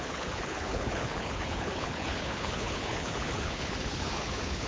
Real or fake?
fake